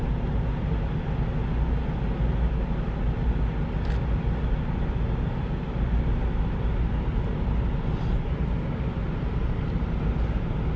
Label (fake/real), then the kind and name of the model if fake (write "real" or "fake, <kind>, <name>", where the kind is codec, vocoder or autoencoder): real